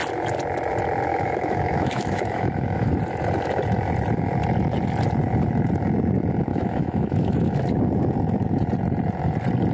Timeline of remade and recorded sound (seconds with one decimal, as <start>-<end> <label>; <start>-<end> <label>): 0.0-1.1 recorded; 1.1-2.9 remade; 2.9-6.5 recorded; 6.5-7.6 remade; 7.6-9.7 recorded